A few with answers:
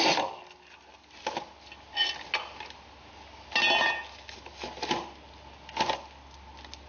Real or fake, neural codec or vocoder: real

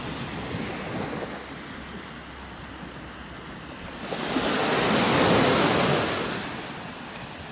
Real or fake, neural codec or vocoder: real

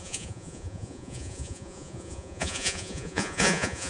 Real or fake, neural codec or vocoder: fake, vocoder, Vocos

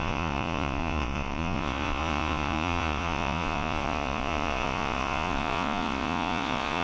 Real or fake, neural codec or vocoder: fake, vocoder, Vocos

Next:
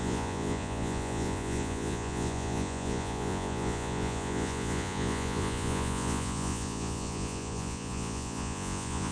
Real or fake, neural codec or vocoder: fake, vocoder, Vocos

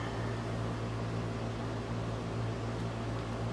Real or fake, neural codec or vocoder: real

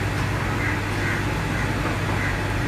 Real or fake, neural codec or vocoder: real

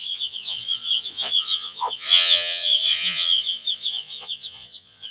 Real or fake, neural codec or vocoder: fake, vocoder, Vocos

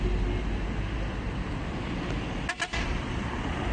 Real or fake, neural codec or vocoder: real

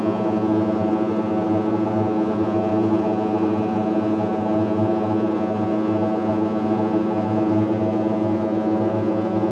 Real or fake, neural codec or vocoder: fake, vocoder, Vocos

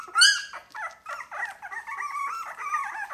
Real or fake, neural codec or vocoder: real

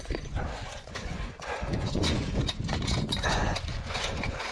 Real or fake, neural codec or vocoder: fake, vocoder, Vocos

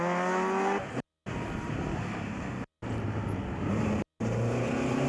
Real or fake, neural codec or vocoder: real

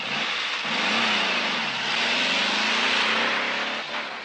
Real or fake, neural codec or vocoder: real